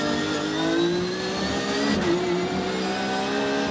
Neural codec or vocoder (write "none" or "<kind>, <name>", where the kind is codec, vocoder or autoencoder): none